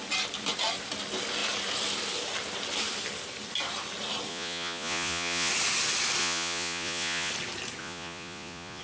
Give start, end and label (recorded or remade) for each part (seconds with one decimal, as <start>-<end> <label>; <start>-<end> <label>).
0.0-4.3 recorded; 4.3-5.5 remade; 5.5-6.2 recorded; 6.2-7.3 remade; 7.3-7.8 recorded; 7.8-8.8 remade